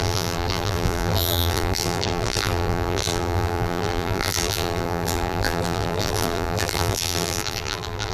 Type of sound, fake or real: fake